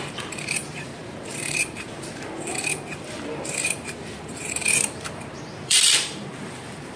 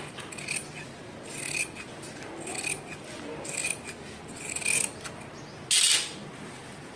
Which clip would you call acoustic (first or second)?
second